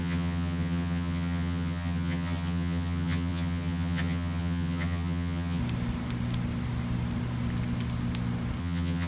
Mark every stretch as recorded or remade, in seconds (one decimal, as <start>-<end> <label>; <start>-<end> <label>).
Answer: 0.0-5.6 remade; 5.6-8.6 recorded; 8.6-9.1 remade